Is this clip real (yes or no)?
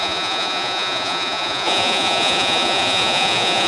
no